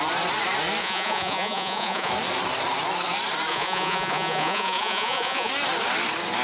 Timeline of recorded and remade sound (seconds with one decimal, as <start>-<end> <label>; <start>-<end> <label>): 0.0-0.8 recorded; 0.8-2.1 remade; 2.1-3.5 recorded; 3.5-5.5 remade; 5.5-6.4 recorded